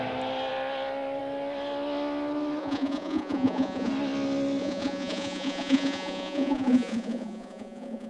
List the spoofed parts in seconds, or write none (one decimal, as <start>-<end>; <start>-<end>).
2.6-3.9; 4.6-8.1